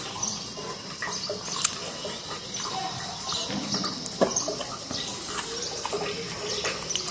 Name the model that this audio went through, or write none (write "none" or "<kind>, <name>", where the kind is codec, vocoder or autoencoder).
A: none